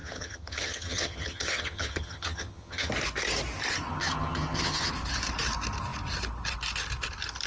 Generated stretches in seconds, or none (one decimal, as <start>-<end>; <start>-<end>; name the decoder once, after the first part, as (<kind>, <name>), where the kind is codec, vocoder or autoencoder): 0.0-2.9 (vocoder, HiFi-GAN); 3.9-4.9